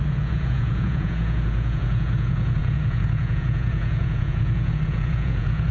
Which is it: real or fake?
fake